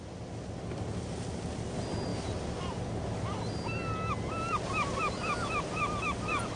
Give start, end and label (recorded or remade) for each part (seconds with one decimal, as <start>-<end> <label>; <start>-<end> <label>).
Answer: 0.0-2.1 recorded; 2.1-2.8 remade; 2.8-5.0 recorded; 5.0-5.9 remade; 5.9-6.6 recorded